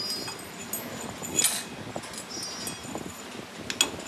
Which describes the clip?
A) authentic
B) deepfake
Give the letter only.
A